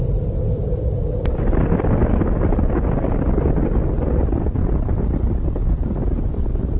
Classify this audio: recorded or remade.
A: recorded